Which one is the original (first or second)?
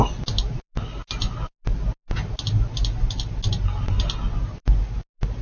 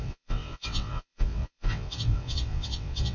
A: first